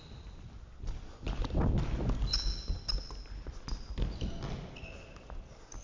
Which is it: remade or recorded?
recorded